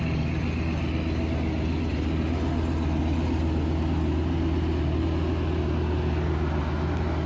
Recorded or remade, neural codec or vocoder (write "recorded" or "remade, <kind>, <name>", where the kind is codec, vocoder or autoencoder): recorded